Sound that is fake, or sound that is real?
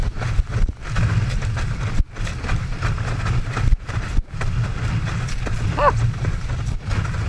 real